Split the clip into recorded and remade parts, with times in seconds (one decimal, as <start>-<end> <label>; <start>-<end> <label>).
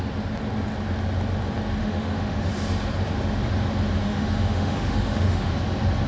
0.0-1.8 recorded; 1.8-2.5 remade; 2.5-4.0 recorded; 4.0-5.5 remade; 5.5-6.1 recorded